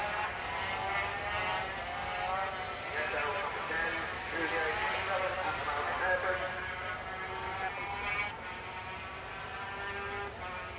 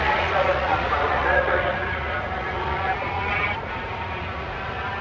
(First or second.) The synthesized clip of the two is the second